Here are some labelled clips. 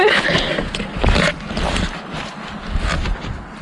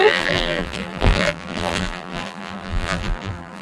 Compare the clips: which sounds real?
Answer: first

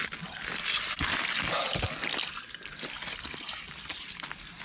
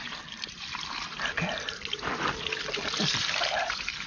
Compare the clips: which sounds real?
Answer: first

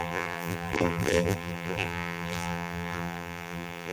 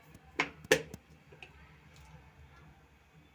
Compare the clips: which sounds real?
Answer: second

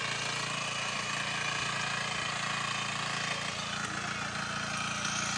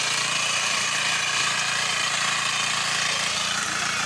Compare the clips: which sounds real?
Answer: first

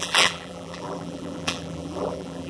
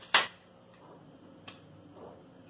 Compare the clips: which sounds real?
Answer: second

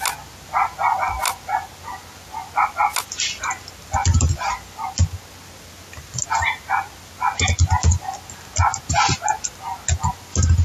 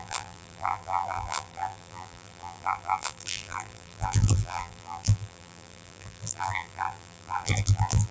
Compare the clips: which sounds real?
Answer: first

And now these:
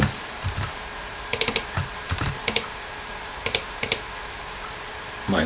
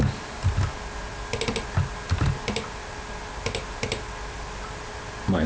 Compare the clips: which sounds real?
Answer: second